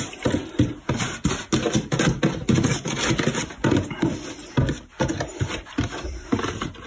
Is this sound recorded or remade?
recorded